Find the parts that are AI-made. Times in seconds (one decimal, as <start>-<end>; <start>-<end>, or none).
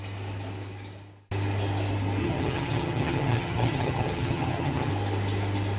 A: 2.2-4.9